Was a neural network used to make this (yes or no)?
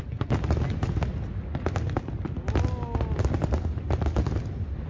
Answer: no